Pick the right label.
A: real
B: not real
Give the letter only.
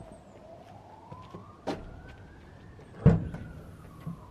A